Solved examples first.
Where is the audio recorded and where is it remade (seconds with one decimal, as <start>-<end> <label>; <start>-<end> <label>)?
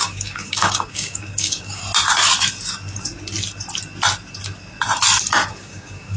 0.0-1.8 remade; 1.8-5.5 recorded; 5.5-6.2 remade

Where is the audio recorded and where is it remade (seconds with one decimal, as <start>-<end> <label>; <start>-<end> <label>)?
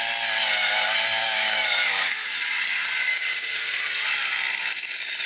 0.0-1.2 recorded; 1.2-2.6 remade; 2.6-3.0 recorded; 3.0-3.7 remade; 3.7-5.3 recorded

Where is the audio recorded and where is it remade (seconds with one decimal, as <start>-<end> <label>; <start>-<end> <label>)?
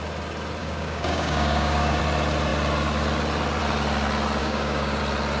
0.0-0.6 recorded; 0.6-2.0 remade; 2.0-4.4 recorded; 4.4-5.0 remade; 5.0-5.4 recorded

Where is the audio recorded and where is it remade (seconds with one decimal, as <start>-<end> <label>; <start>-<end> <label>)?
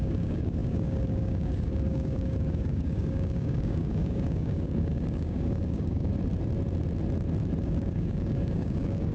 0.0-6.1 remade; 6.1-7.6 recorded; 7.6-9.1 remade